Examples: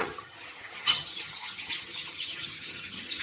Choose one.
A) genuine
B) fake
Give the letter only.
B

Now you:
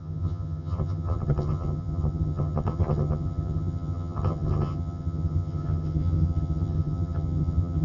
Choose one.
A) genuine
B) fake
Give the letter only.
B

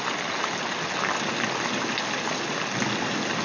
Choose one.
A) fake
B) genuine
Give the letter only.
B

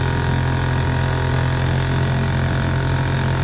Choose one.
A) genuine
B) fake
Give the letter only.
A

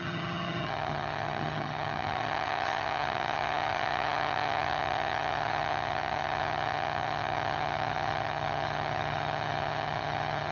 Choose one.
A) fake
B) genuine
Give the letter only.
A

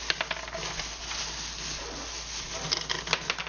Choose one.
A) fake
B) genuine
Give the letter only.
B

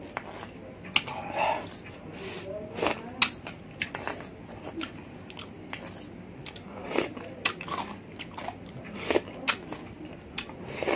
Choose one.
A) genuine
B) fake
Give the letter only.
A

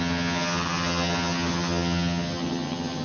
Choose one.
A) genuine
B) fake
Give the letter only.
B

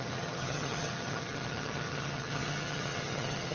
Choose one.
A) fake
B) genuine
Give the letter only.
A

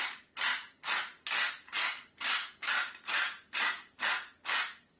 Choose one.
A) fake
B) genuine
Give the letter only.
B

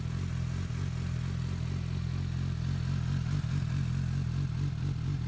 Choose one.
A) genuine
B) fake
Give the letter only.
A